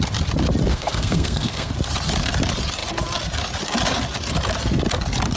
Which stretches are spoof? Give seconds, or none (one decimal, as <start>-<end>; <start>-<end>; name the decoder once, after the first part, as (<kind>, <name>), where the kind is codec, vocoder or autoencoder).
0.7-1.7 (codec, SNAC)